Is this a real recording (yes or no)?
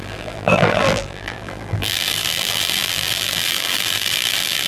no